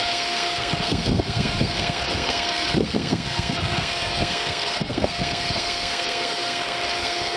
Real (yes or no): no